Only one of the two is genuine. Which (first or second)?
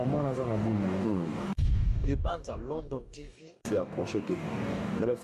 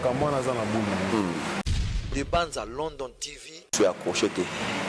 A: second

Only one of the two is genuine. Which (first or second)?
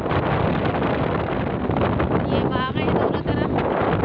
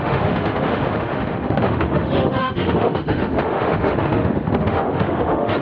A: first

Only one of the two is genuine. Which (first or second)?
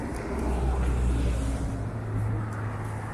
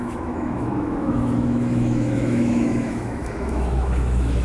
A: first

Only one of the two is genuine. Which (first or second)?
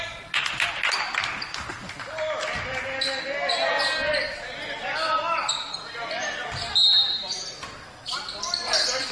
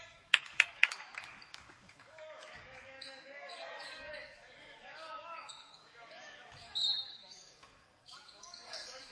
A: first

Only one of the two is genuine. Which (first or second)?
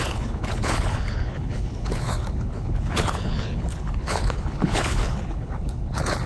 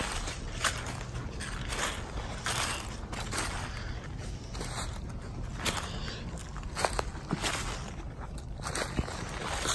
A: second